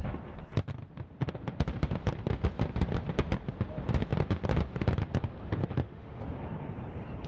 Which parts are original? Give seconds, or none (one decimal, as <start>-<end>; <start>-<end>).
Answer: 0.0-5.6; 6.2-7.3